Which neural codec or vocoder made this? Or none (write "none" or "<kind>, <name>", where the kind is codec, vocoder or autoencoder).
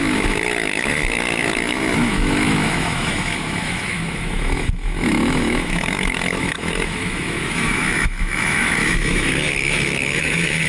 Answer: autoencoder, DAC-VAE